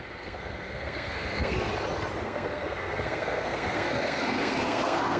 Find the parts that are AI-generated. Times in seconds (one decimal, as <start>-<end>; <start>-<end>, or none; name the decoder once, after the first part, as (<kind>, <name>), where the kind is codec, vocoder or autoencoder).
0.0-1.7 (codec, SNAC); 2.2-5.2